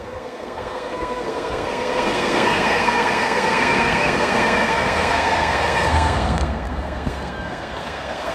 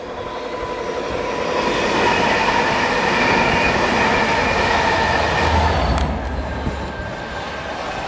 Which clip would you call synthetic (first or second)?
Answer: first